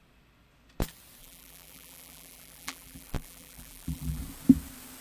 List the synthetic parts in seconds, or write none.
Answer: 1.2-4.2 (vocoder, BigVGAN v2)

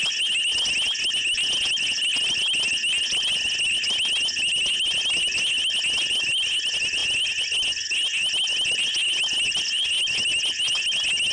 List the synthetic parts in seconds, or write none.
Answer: none

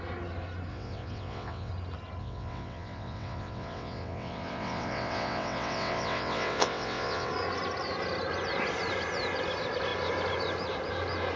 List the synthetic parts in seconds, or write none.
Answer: 0.7-1.7 (vocoder, WaveNeXt); 2.2-7.3